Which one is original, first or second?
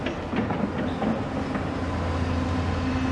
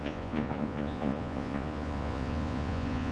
first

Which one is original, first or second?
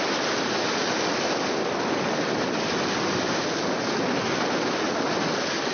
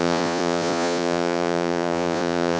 first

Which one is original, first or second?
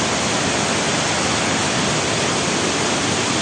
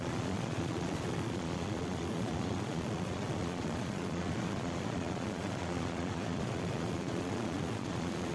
first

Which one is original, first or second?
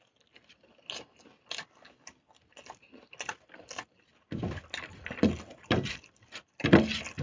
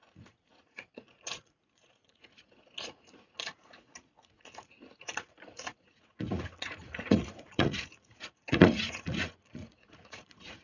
first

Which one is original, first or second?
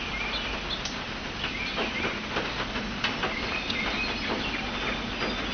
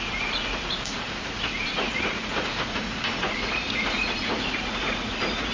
first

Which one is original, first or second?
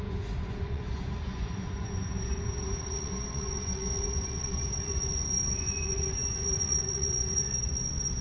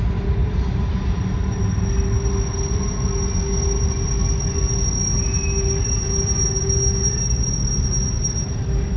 second